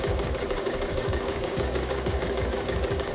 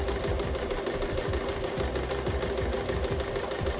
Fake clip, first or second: first